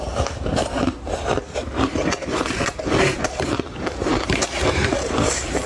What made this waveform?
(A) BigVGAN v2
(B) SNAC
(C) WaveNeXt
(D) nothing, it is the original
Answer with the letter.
A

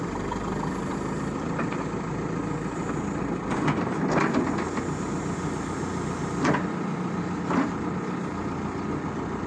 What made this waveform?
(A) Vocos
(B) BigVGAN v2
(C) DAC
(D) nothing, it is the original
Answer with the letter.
D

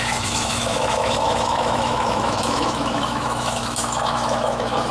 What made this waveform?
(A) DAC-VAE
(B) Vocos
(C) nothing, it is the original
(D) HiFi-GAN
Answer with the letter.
A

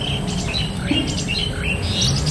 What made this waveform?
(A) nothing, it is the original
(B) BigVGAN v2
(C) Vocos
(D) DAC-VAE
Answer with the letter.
A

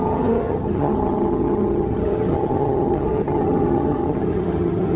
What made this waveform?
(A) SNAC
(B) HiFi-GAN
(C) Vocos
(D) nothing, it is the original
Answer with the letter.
B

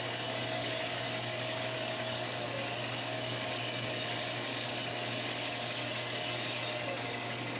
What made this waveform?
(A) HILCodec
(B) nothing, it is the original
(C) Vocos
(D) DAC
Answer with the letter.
D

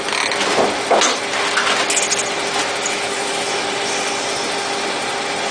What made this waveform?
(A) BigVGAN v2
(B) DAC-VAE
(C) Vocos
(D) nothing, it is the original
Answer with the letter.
D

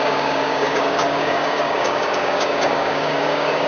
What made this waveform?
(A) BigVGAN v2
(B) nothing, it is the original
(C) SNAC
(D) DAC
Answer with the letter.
D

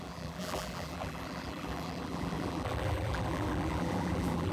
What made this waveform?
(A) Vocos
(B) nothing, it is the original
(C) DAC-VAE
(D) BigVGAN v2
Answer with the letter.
D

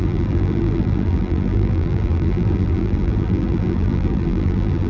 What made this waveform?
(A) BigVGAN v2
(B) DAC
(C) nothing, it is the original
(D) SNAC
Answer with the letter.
A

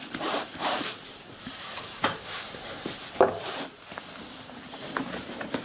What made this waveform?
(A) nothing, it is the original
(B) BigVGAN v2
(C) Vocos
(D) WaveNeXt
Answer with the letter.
B